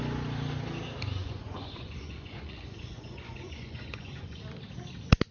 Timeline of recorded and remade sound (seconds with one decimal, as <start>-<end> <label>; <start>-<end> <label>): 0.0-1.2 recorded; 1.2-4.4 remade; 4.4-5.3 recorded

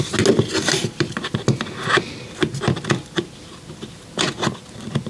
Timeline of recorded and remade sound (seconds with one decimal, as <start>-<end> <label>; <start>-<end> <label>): 0.0-5.1 recorded

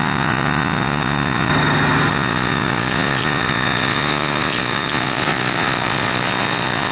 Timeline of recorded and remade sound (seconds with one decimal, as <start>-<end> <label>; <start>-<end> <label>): 0.0-1.5 remade; 1.5-2.1 recorded; 2.1-6.9 remade

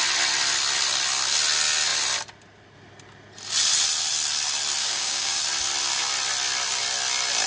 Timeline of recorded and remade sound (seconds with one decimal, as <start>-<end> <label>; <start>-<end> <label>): 0.0-4.8 recorded; 4.8-5.4 remade; 5.4-7.5 recorded

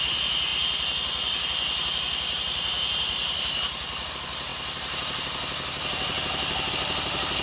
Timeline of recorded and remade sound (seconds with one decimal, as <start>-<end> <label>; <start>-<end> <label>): 0.0-7.4 recorded

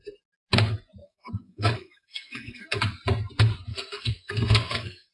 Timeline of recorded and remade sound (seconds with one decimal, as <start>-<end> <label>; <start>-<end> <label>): 0.0-1.0 recorded; 1.0-2.8 remade; 2.8-3.7 recorded; 3.7-5.1 remade

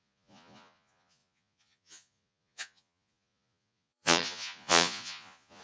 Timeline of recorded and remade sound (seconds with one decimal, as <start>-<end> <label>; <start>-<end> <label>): 0.0-5.6 remade